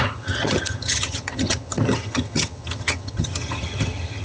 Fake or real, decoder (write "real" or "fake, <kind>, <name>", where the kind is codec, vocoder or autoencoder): fake, vocoder, HiFi-GAN